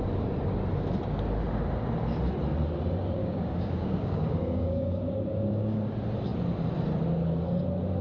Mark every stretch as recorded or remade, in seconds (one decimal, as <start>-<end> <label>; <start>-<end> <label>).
0.0-3.2 recorded; 3.2-5.8 remade; 5.8-8.0 recorded